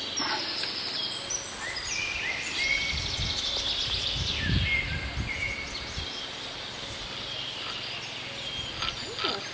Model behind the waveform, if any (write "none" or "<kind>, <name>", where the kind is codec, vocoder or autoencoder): none